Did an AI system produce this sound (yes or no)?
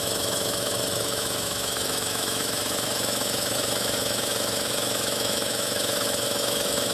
yes